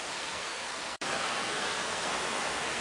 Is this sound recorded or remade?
remade